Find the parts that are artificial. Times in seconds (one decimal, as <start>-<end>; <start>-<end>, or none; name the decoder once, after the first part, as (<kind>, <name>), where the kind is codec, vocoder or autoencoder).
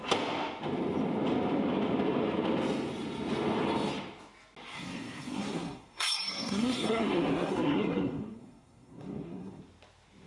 4.7-9.6 (codec, SNAC)